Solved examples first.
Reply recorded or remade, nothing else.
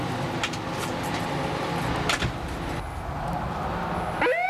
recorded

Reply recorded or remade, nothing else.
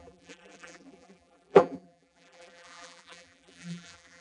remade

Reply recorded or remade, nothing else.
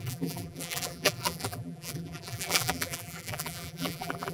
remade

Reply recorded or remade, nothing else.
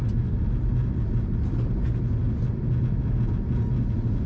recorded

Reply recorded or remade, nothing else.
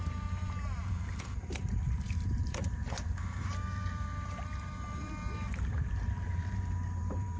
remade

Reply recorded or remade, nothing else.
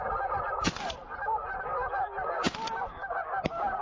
recorded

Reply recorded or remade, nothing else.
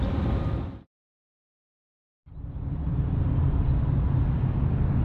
recorded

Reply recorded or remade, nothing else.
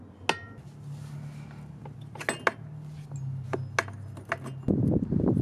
recorded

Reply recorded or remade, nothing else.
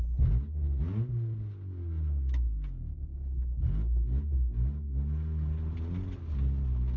recorded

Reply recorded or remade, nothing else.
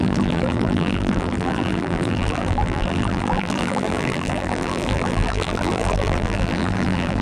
remade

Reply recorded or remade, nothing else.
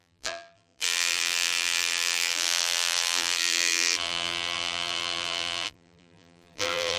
remade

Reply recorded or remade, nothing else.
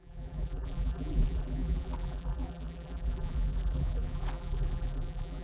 remade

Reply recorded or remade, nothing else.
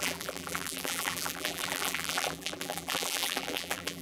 remade